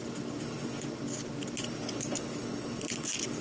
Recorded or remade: recorded